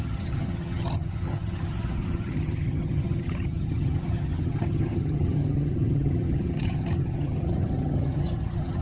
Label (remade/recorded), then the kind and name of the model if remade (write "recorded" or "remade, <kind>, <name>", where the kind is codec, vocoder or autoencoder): remade, vocoder, HiFi-GAN